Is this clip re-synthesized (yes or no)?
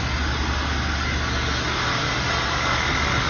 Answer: no